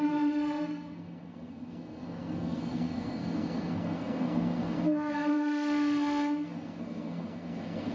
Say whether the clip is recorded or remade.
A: remade